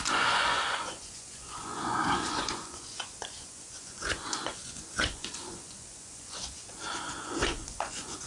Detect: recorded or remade remade